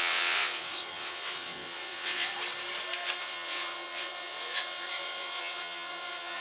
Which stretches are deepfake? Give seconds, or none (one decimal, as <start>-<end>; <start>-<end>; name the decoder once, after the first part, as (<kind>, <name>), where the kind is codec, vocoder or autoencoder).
0.0-2.3 (vocoder, WaveNeXt); 3.2-6.4